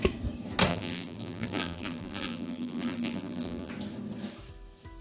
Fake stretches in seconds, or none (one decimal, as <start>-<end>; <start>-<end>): 0.7-3.7